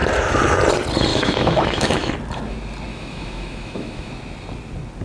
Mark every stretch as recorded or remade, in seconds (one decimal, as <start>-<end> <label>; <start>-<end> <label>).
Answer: 0.0-1.1 recorded; 1.1-2.1 remade; 2.1-2.9 recorded; 2.9-4.1 remade; 4.1-5.0 recorded